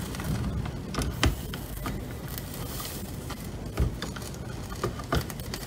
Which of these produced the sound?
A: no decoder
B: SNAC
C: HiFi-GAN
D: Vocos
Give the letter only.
A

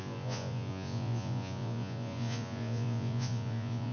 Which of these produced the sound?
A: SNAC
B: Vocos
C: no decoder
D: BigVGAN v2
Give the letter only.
B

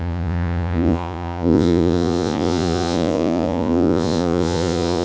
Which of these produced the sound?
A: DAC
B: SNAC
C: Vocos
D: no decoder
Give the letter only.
C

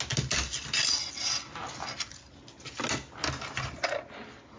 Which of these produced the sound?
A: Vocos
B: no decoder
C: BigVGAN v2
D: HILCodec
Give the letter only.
B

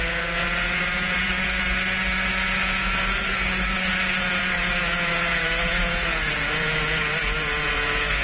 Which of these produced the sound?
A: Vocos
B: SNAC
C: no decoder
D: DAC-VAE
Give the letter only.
A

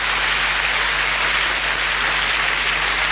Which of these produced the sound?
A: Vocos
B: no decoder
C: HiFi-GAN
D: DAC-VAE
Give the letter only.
B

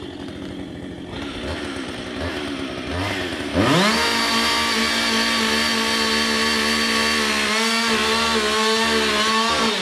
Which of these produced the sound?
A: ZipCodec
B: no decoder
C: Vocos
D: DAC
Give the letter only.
B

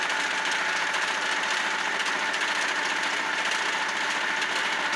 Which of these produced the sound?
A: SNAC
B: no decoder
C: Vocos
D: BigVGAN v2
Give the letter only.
B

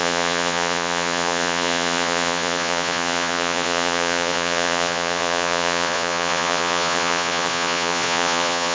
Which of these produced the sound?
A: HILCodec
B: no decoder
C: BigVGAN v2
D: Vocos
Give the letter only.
D